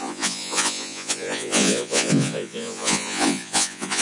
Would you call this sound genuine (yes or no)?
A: no